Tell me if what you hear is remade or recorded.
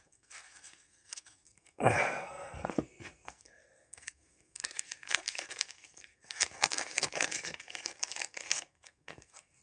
remade